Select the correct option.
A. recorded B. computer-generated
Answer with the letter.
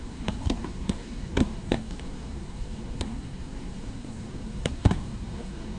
B